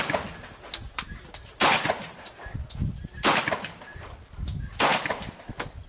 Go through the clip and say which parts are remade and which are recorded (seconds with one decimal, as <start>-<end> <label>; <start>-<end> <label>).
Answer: 0.0-5.9 recorded